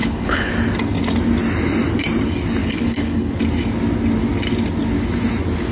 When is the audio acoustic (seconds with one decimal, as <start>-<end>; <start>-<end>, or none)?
0.5-2.6; 3.3-5.7